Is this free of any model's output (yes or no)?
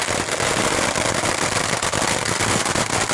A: yes